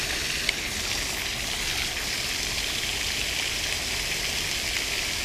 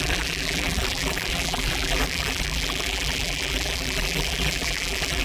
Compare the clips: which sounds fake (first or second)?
second